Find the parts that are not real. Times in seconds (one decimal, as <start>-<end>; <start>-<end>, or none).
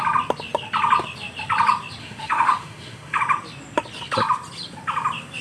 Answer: 2.0-3.2